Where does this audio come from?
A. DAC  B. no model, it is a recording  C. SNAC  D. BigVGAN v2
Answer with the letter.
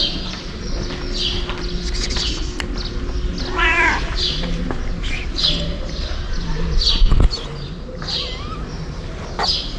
B